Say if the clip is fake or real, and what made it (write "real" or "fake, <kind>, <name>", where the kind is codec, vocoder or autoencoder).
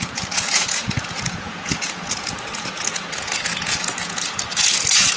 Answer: fake, vocoder, Vocos